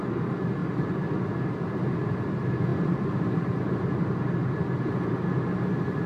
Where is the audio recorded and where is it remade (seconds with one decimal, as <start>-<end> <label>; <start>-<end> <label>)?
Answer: 0.0-2.7 recorded; 2.7-3.5 remade; 3.5-6.1 recorded